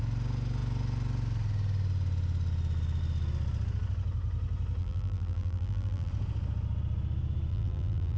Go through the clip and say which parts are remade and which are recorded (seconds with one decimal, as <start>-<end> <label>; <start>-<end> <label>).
0.0-4.8 recorded; 4.8-6.1 remade; 6.1-7.5 recorded; 7.5-8.2 remade